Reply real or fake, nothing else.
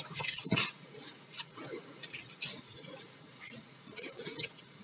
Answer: fake